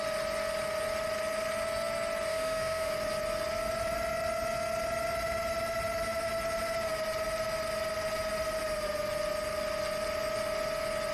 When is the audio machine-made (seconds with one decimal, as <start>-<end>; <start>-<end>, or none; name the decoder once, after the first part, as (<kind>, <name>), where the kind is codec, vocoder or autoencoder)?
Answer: 2.3-2.9 (autoencoder, DAC-VAE)